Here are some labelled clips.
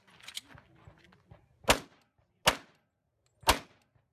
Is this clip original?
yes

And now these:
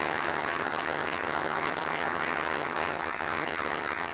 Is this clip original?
no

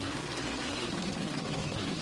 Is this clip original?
no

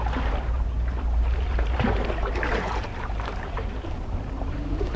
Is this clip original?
no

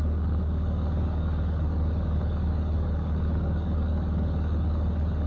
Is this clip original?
no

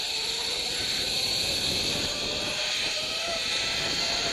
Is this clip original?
no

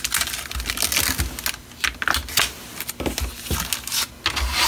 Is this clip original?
yes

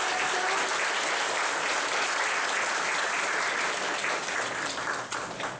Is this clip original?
yes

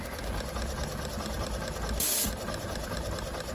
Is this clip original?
yes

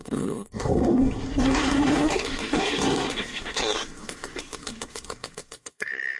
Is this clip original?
no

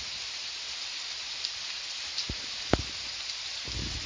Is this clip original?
yes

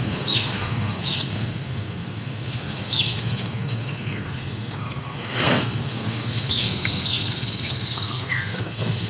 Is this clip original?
no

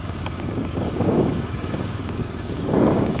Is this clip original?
no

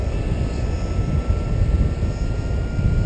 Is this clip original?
yes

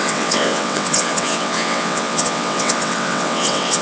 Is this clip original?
no